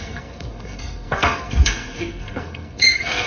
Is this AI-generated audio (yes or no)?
yes